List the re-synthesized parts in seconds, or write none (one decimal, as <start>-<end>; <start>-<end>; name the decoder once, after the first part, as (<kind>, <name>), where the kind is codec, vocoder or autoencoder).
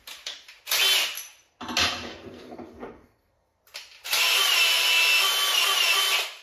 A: 2.1-3.6 (codec, SNAC)